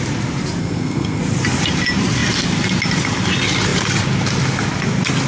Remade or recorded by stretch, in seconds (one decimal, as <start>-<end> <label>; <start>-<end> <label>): 0.0-0.6 recorded; 0.6-1.2 remade; 1.2-5.3 recorded